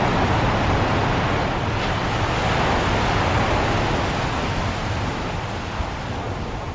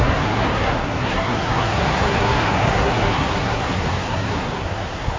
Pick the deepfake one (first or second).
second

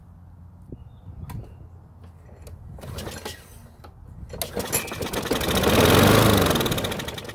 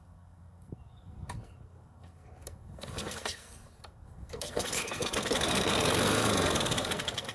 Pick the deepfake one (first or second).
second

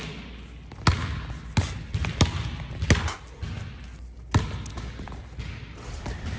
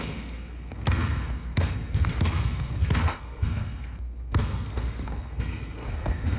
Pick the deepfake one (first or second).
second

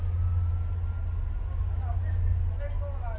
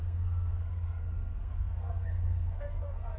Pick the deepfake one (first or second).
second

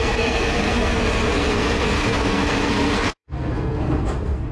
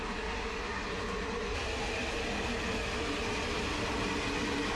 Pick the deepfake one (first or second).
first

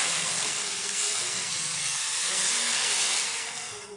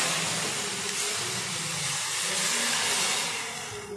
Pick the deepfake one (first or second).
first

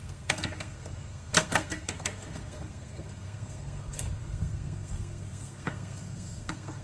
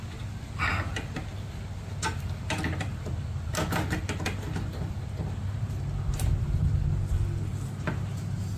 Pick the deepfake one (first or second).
first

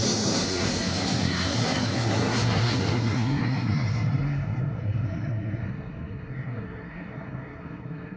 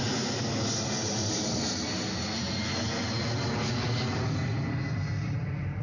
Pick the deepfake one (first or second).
first